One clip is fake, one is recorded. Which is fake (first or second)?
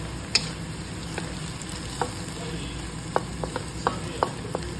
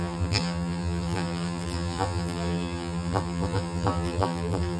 second